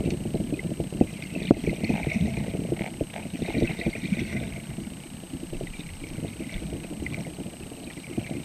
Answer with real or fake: real